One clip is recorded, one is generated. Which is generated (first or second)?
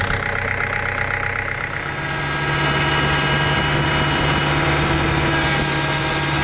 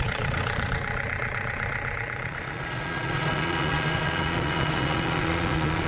second